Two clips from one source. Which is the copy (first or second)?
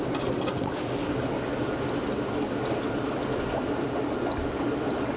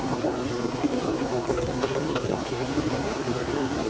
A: second